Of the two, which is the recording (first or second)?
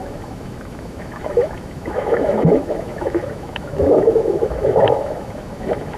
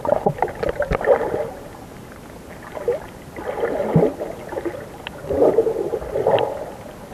second